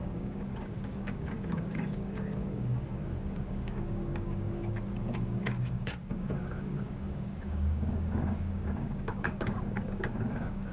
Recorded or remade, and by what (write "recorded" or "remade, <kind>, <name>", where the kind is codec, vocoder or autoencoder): remade, codec, DAC